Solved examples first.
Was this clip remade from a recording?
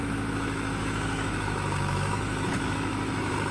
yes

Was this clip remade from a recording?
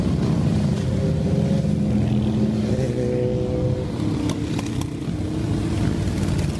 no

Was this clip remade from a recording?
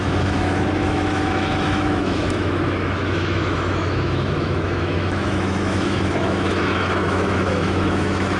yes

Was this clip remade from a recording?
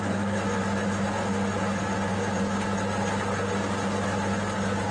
no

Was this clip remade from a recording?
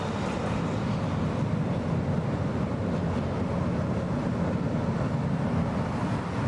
no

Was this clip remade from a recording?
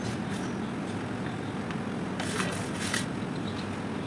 no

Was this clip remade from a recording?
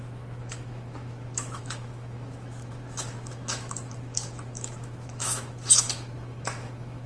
yes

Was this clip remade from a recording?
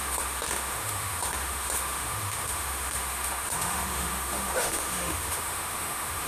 yes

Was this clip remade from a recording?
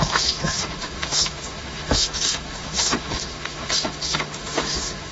yes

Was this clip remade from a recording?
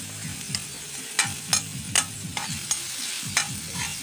no